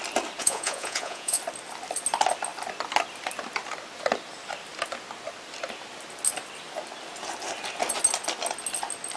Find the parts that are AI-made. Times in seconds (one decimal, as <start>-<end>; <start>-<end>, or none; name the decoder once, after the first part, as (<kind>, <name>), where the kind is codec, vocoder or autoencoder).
0.4-1.4 (vocoder, Vocos)